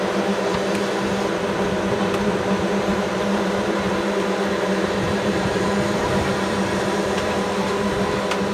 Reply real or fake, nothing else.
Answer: fake